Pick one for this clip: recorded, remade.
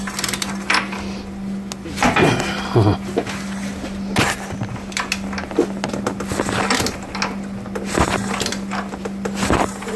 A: recorded